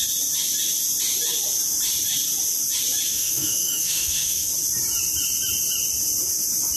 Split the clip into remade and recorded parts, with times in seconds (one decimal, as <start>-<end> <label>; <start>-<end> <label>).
0.0-3.1 recorded; 3.1-4.5 remade; 4.5-6.8 recorded